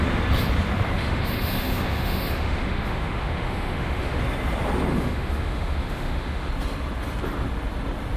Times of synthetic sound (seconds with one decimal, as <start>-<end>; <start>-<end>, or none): 1.0-4.2; 4.9-6.5